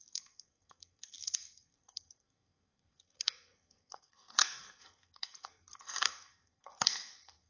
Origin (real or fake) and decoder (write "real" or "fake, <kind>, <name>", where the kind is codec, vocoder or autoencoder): fake, codec, SNAC